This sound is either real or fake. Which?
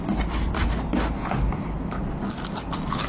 real